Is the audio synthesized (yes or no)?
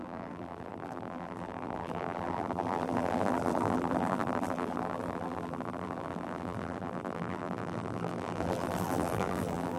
yes